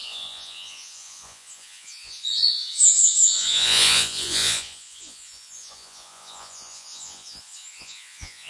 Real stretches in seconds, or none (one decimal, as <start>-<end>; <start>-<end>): none